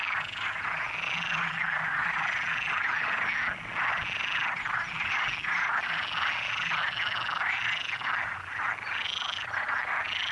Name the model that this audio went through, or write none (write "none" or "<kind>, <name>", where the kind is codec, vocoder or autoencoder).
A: none